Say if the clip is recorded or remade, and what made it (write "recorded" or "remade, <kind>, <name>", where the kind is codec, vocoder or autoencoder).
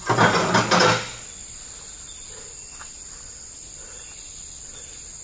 recorded